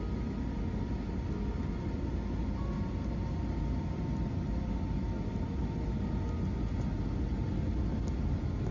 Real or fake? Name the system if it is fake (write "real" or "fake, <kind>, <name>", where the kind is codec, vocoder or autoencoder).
real